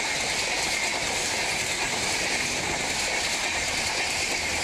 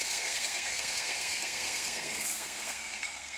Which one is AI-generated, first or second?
second